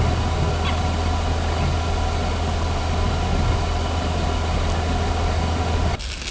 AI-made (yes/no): no